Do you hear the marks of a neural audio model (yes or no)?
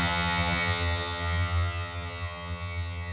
yes